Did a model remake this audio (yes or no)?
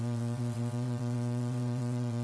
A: yes